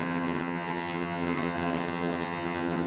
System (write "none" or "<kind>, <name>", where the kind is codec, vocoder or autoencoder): vocoder, HiFi-GAN